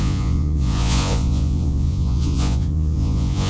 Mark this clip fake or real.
fake